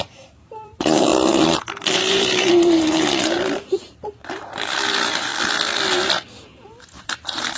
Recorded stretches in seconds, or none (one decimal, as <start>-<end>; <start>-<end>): 1.1-2.1; 5.3-7.0